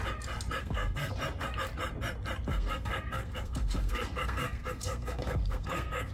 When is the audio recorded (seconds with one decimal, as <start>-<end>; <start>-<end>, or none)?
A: 0.0-0.6; 1.1-2.5